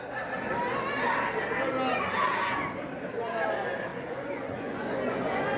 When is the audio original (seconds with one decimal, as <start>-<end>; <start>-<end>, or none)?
0.0-3.9